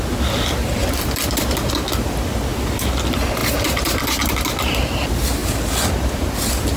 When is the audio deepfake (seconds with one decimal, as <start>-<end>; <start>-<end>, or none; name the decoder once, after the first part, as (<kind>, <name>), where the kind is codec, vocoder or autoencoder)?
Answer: 0.8-1.7 (vocoder, BigVGAN v2); 2.5-3.0; 3.4-4.3